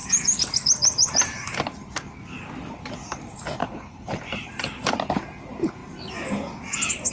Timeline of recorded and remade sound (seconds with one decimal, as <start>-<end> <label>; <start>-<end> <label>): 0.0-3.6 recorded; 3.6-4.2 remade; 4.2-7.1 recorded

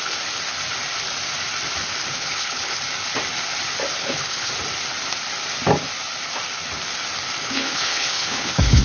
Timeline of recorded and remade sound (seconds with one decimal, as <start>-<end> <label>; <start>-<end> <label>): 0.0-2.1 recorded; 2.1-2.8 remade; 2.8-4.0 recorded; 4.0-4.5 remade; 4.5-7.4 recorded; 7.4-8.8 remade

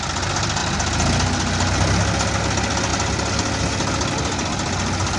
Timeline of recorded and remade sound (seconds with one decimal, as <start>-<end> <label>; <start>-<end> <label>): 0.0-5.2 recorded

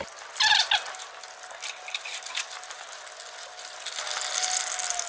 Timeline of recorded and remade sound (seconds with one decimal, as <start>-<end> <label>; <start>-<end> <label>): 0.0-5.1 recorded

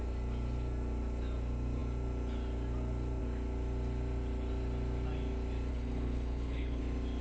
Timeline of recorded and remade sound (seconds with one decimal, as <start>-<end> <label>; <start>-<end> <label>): 0.0-5.7 recorded; 5.7-6.8 remade; 6.8-7.2 recorded

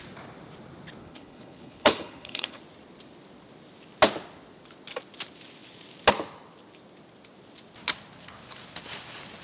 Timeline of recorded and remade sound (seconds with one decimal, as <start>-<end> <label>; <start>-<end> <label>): 0.0-1.0 recorded; 1.0-2.6 remade; 2.6-9.4 recorded

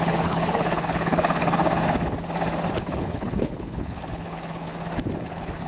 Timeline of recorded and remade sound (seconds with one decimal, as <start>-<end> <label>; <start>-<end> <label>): 0.0-1.6 remade; 1.6-2.7 recorded; 2.7-4.7 remade; 4.7-5.2 recorded; 5.2-5.7 remade